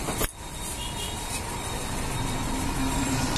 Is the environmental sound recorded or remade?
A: recorded